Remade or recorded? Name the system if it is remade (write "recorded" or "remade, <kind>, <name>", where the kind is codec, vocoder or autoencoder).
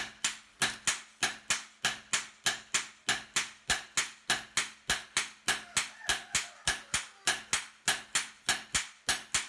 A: recorded